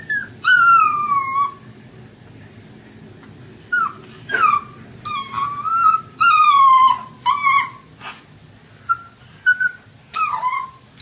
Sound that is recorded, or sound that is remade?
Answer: recorded